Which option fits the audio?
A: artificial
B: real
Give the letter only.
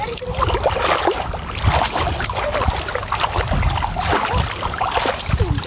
B